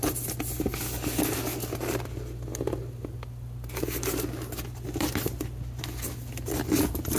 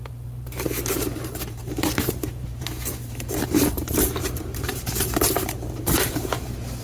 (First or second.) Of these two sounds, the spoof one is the second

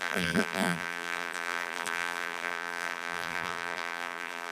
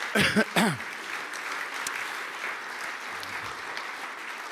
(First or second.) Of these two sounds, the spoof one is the first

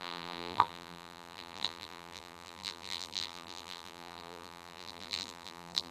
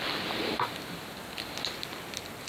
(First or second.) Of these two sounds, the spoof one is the first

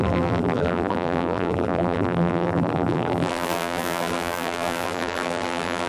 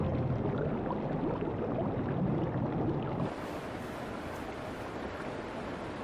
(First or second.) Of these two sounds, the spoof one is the first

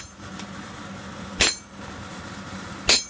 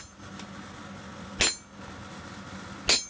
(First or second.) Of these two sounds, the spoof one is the first